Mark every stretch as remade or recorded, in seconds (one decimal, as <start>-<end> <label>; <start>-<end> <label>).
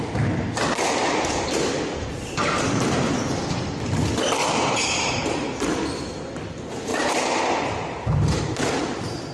0.0-1.0 recorded; 1.0-3.1 remade; 3.1-4.4 recorded; 4.4-5.2 remade; 5.2-6.9 recorded; 6.9-8.4 remade; 8.4-9.3 recorded